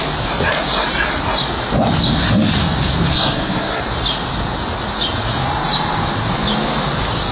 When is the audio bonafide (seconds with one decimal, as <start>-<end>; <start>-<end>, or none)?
0.0-3.1; 3.8-7.3